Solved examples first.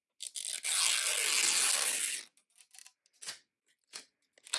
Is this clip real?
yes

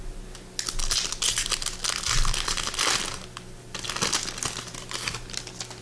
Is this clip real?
yes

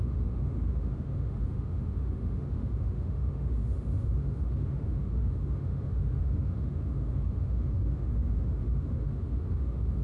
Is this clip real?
no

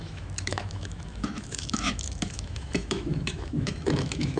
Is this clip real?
no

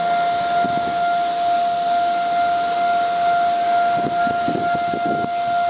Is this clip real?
yes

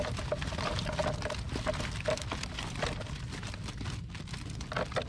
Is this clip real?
yes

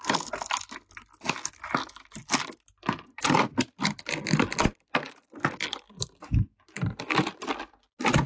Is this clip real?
yes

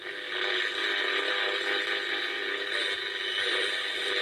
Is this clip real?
yes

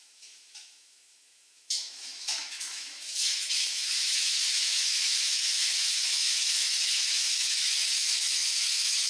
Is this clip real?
no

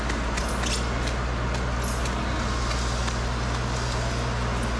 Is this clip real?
yes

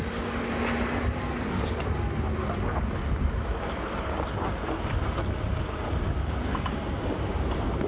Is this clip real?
yes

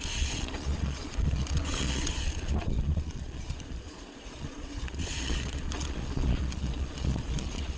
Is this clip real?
no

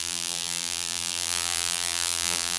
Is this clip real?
no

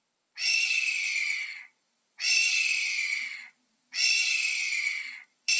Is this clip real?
no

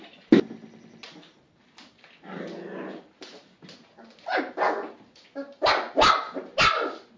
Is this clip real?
yes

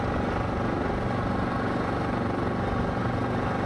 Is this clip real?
yes